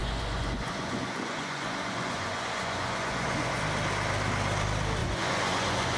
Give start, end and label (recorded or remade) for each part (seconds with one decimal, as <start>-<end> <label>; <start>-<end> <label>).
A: 0.0-3.6 remade; 3.6-5.0 recorded; 5.0-6.0 remade